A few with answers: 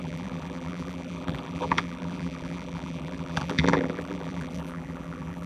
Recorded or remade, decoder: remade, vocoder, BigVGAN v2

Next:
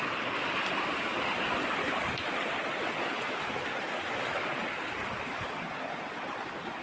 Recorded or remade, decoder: recorded